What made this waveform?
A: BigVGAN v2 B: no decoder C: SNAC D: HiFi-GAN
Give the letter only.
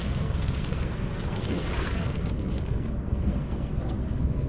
C